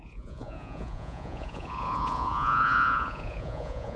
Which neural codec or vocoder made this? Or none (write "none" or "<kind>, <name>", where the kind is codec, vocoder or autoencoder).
vocoder, Vocos